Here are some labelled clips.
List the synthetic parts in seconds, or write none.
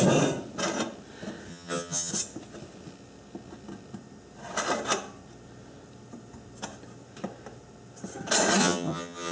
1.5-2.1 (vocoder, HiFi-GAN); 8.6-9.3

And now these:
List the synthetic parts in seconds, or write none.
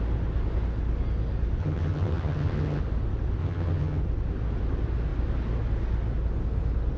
1.6-2.8 (vocoder, HiFi-GAN); 3.4-4.0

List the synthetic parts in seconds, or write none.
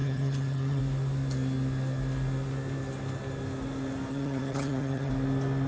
0.0-0.8 (vocoder, HiFi-GAN); 4.1-5.1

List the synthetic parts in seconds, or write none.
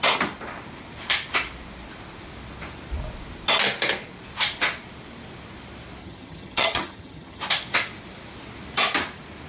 6.0-7.4 (vocoder, HiFi-GAN)